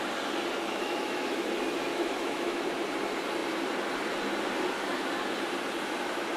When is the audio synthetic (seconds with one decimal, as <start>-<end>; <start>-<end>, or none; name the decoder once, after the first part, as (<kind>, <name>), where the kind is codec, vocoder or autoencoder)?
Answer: 0.7-1.5 (autoencoder, DAC-VAE); 1.9-2.6